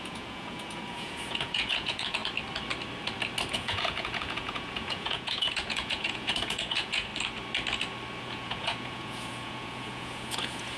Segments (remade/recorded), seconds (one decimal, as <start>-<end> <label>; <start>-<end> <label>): 0.0-2.2 remade; 2.2-3.5 recorded; 3.5-7.1 remade; 7.1-8.2 recorded; 8.2-10.8 remade